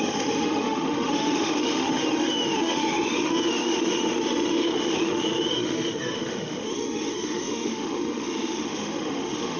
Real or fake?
fake